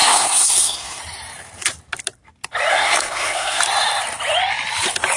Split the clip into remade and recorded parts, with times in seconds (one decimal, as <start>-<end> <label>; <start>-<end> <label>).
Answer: 0.0-1.0 remade; 1.0-2.7 recorded; 2.7-3.6 remade; 3.6-5.2 recorded